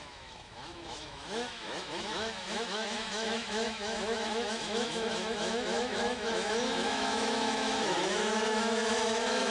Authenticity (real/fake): fake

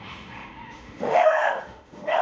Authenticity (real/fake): fake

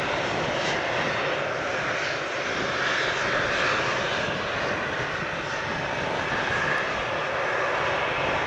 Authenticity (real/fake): real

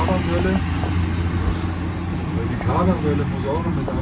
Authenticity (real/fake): real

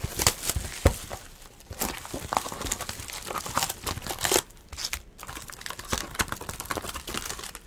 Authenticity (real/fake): real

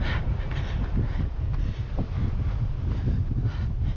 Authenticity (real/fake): real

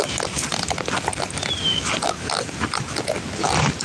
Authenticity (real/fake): real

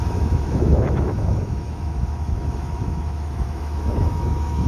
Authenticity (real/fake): fake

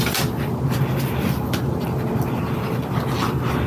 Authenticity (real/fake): real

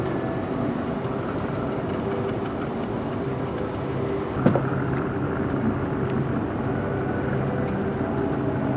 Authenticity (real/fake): real